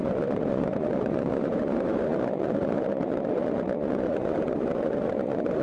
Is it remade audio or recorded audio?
remade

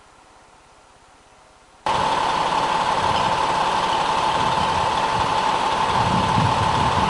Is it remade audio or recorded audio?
recorded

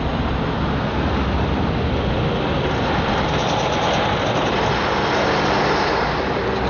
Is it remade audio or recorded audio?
recorded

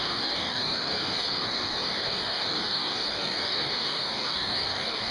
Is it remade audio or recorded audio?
remade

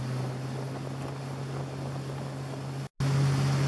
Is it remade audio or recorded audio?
recorded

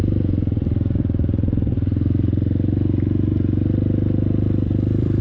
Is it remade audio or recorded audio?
remade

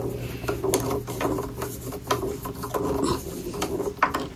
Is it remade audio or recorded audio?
recorded